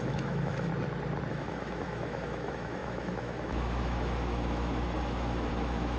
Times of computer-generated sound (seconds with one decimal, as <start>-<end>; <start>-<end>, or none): 0.0-0.7; 1.3-6.0